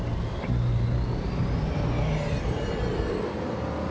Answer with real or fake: real